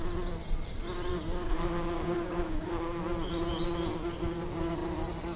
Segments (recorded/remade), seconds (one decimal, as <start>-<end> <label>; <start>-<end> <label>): 0.0-1.1 recorded; 1.1-3.0 remade; 3.0-5.4 recorded